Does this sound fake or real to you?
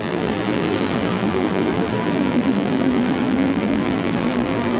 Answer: fake